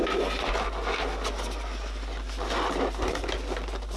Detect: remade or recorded recorded